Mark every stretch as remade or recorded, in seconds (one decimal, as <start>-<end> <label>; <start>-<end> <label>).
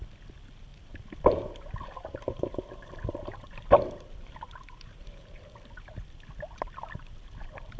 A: 0.0-0.7 recorded; 0.7-5.4 remade; 5.4-7.8 recorded